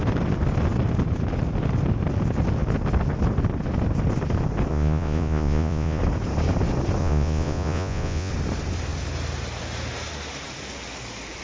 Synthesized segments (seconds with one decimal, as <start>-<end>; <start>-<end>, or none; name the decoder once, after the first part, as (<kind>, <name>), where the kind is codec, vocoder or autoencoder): 4.7-6.0 (vocoder, Vocos); 7.0-8.3